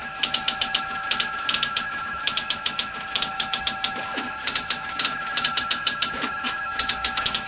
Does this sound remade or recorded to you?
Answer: remade